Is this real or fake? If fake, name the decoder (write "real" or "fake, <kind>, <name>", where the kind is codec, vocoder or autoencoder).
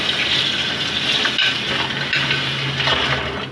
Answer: real